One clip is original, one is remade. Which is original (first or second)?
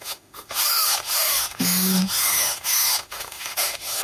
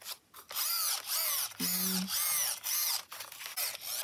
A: second